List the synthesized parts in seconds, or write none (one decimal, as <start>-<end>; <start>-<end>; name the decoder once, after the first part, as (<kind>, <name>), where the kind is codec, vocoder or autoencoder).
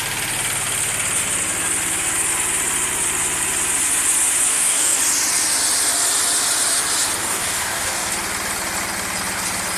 4.5-5.0 (codec, DAC); 7.2-8.1